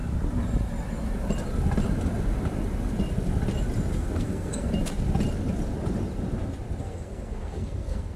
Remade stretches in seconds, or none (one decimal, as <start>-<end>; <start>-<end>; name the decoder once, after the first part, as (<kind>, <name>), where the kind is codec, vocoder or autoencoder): 3.9-4.7 (codec, SNAC); 6.8-8.2